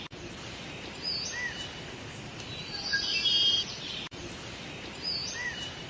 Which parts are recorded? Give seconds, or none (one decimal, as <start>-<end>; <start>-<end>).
0.0-2.6; 4.2-5.2